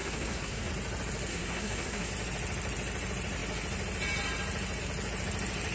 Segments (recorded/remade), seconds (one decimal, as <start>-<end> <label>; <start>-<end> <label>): 0.0-0.7 remade; 0.7-1.3 recorded; 1.3-2.1 remade; 2.1-5.7 recorded